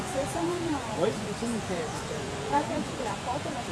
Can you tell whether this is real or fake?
fake